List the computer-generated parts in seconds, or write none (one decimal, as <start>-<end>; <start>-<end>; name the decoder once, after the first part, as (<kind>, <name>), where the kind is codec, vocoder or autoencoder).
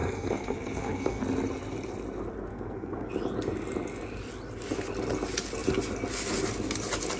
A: 0.0-1.2 (codec, SNAC); 2.5-3.1